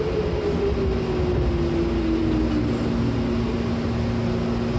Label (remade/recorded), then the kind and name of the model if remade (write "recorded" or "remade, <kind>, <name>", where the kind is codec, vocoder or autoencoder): recorded